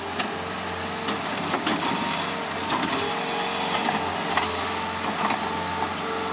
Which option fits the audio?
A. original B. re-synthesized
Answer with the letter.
A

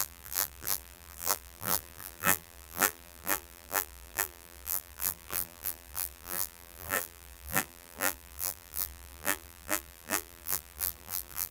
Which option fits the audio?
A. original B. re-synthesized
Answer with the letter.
B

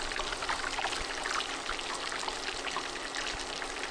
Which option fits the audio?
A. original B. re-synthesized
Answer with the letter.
A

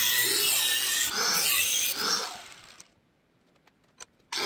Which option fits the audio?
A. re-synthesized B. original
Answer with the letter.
B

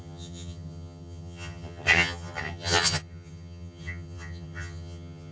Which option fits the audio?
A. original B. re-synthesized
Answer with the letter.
B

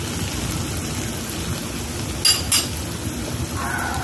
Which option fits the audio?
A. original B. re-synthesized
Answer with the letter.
A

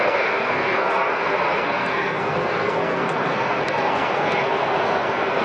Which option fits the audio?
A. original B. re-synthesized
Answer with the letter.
B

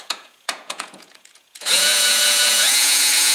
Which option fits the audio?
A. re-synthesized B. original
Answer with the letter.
A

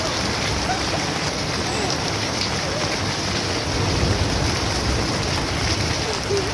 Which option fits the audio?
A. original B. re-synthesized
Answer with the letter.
A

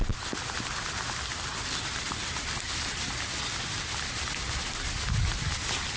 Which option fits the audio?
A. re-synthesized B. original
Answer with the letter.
B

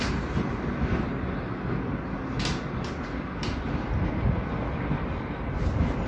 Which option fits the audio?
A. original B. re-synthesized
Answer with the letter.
A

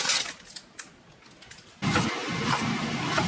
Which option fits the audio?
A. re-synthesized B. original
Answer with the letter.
B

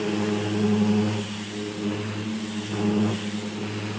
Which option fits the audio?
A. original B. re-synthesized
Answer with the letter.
A